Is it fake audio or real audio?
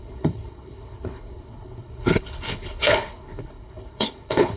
fake